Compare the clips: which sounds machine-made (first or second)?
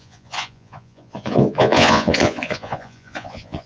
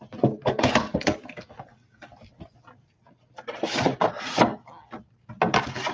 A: first